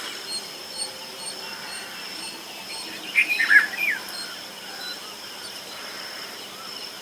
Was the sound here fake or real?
fake